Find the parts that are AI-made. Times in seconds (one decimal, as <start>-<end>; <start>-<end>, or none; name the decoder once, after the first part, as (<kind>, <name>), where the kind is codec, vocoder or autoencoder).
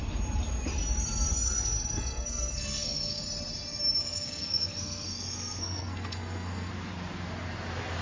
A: 1.3-3.2 (codec, SNAC); 4.0-6.7